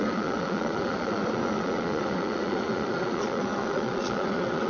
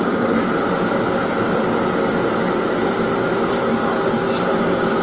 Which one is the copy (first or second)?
first